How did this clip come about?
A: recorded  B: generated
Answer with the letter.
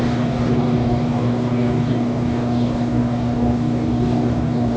B